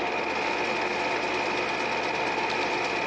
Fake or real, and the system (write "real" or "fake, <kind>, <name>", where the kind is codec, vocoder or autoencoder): real